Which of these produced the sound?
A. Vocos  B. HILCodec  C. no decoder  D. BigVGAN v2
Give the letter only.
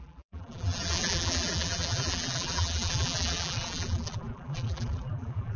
D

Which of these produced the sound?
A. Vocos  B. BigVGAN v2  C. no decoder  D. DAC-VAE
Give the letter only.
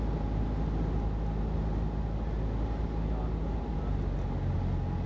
C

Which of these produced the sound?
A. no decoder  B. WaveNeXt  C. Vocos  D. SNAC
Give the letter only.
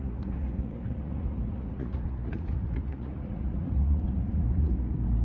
C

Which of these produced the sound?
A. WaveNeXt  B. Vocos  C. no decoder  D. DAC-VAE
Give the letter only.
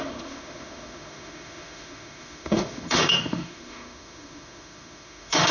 D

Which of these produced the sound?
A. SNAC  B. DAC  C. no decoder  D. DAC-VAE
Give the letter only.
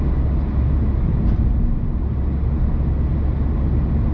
C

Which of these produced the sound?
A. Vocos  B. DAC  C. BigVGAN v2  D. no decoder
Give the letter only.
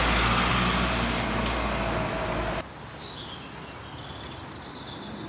D